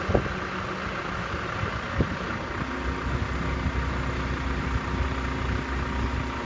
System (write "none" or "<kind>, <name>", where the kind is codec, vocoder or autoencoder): none